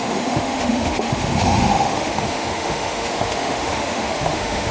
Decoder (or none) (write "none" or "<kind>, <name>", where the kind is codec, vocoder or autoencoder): autoencoder, DAC-VAE